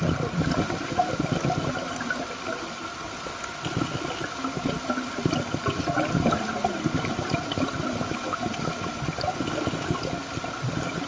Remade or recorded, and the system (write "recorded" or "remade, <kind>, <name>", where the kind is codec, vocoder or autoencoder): recorded